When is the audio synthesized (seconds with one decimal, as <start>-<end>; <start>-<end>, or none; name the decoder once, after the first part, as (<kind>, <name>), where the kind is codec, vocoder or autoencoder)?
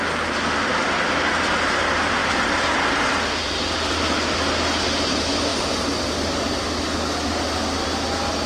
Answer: 5.5-6.6 (vocoder, BigVGAN v2)